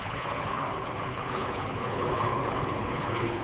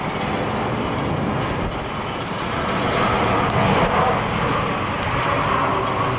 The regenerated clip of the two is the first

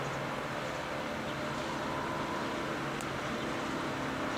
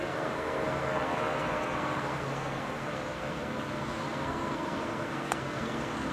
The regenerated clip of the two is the second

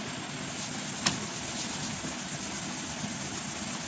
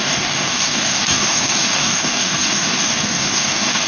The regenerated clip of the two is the second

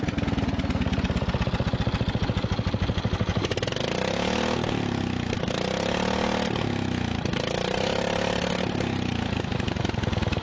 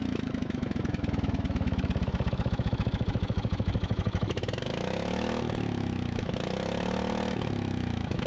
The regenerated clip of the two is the second